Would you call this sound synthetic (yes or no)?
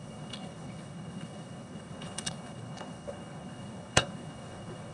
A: yes